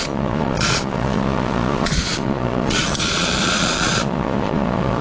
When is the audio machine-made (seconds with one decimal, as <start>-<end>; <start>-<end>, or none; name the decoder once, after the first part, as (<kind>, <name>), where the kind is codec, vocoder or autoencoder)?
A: 0.0-5.0 (vocoder, Vocos)